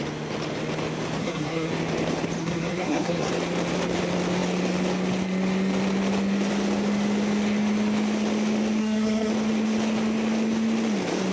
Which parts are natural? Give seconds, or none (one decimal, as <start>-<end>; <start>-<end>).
0.0-1.2; 1.7-2.4; 3.3-8.8; 9.3-11.3